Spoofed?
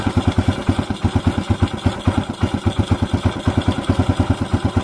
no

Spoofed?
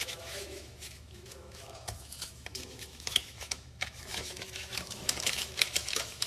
yes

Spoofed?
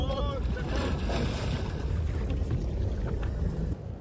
no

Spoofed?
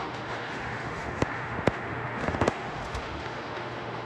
yes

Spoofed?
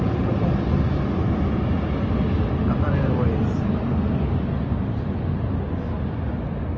no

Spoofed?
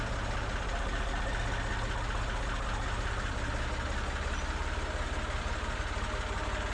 no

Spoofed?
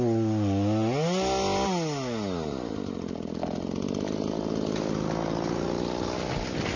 no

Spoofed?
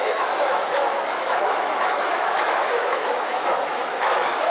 yes